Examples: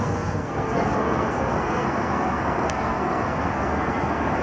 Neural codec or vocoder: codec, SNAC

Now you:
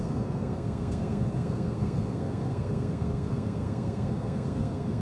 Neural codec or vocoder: codec, SNAC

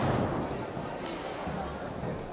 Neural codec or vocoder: none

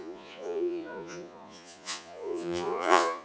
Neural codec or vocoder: vocoder, Vocos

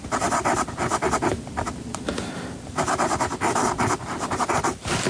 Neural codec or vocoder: none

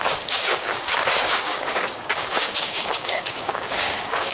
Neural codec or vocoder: codec, DAC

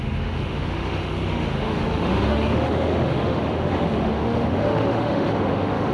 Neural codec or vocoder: autoencoder, DAC-VAE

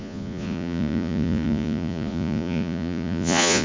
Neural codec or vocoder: vocoder, Vocos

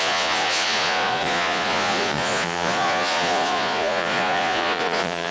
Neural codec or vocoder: vocoder, Vocos